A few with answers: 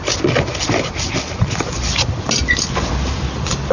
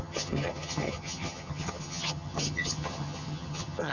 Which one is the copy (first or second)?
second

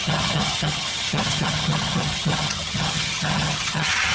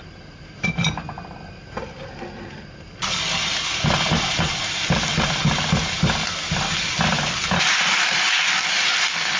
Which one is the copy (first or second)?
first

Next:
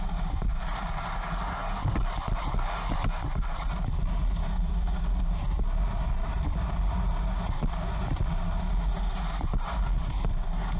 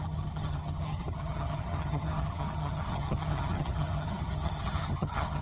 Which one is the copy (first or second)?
second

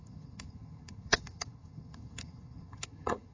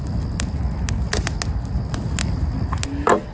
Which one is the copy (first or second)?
first